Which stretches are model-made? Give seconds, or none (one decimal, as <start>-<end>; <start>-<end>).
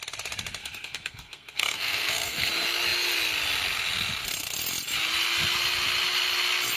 0.6-2.5